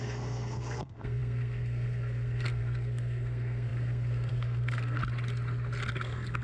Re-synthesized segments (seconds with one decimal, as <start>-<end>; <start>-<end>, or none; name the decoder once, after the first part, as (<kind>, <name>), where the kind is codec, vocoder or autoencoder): 0.0-5.0 (codec, SNAC); 5.9-6.4